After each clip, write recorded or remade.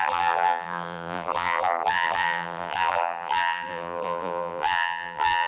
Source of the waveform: remade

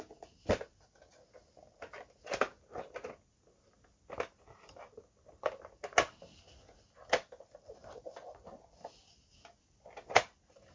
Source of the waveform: recorded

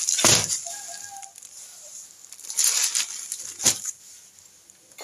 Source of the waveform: recorded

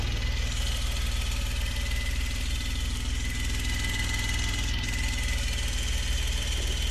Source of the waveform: recorded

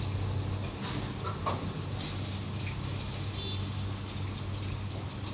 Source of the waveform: recorded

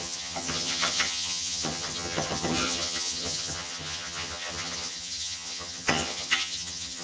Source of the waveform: remade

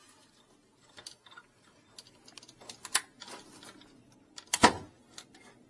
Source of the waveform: recorded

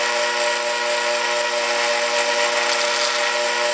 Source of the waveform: recorded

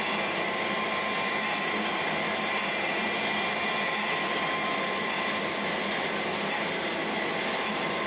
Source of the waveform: recorded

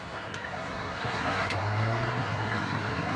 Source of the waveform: remade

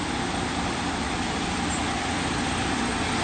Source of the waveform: remade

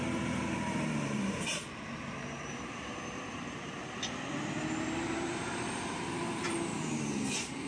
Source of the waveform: remade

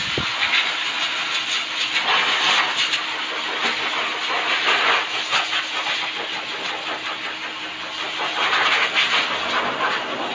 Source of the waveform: recorded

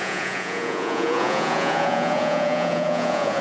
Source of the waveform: remade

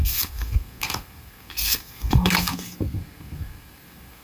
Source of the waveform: remade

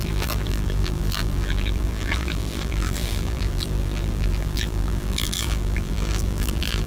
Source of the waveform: remade